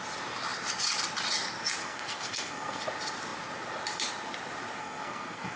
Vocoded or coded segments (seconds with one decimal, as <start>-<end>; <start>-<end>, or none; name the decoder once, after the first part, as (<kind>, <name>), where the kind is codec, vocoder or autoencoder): 1.8-2.8 (codec, SNAC); 4.8-5.6